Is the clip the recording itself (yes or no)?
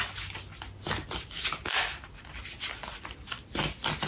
yes